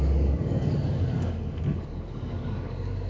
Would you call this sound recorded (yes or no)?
no